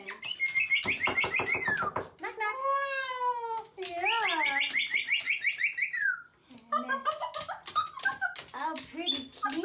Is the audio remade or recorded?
recorded